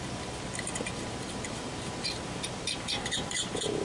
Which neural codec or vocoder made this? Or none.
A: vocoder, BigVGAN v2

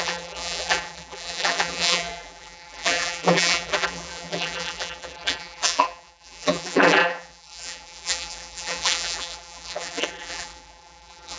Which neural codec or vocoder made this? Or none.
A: vocoder, BigVGAN v2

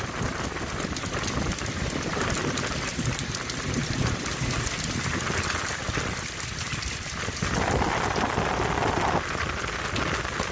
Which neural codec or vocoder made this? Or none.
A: none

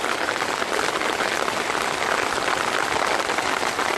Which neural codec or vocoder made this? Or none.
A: none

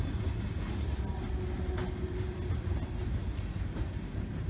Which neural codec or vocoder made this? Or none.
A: none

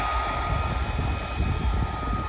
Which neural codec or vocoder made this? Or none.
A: none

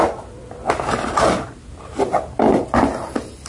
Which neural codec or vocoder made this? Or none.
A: none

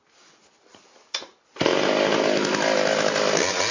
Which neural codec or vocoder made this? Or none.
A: none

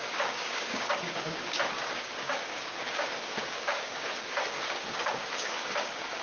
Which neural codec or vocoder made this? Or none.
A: codec, DAC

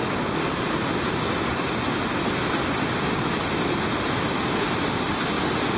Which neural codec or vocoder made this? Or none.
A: none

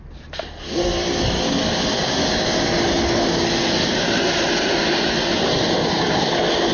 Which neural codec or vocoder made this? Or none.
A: none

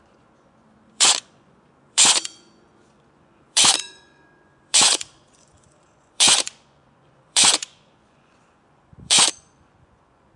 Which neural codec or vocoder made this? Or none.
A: vocoder, Vocos